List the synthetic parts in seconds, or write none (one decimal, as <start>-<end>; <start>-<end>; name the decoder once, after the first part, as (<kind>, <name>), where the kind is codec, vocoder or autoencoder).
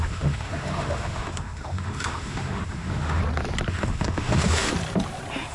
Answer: 0.0-3.2 (autoencoder, DAC-VAE); 3.7-4.7